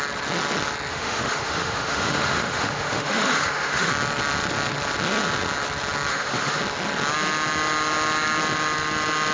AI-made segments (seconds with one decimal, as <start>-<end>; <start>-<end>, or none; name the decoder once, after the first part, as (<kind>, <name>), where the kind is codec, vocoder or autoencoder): 0.9-3.9 (autoencoder, DAC-VAE); 6.1-6.6